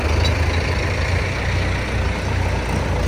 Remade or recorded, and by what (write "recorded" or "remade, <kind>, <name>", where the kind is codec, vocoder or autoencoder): recorded